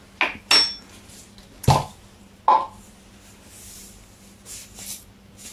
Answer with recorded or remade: recorded